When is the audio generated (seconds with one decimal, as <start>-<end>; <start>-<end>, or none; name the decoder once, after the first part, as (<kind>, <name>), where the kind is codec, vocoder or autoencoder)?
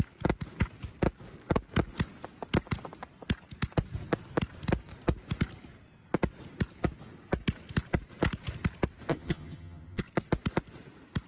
9.1-10.0 (vocoder, HiFi-GAN)